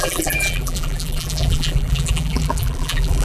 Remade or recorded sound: remade